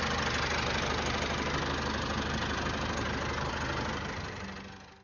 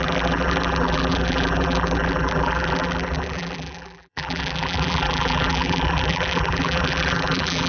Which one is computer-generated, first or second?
second